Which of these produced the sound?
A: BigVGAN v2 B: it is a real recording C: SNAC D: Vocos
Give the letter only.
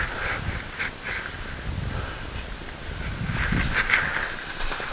B